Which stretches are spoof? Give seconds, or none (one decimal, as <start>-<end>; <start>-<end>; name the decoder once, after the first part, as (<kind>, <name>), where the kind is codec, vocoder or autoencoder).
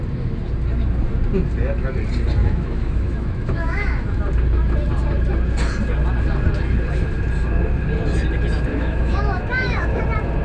2.4-4.2 (autoencoder, DAC-VAE); 8.7-10.0